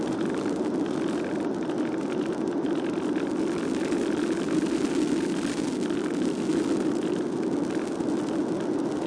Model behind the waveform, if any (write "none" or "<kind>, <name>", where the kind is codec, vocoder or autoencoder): none